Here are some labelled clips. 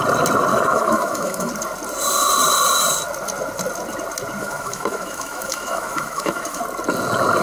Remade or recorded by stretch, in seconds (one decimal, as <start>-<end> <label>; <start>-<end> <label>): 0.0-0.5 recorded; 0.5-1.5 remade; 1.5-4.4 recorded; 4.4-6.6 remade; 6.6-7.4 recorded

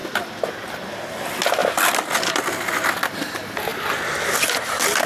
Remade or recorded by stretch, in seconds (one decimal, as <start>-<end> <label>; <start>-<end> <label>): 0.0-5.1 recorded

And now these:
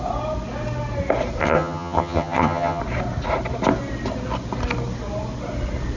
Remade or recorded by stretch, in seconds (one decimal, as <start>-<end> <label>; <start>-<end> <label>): 0.0-1.4 recorded; 1.4-2.8 remade; 2.8-6.0 recorded

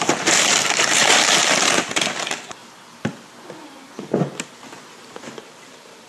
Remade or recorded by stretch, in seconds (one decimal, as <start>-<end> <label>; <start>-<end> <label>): 0.0-2.6 remade; 2.6-5.2 recorded; 5.2-6.1 remade